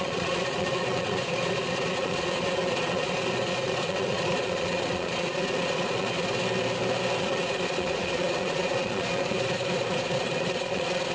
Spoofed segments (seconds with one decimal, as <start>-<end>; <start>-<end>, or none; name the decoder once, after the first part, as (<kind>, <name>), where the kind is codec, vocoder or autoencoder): 0.0-6.4 (vocoder, Vocos); 7.2-11.1